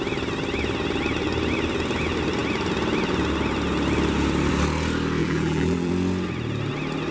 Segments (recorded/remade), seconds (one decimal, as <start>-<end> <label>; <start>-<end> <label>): 0.0-5.2 recorded; 5.2-5.9 remade; 5.9-7.1 recorded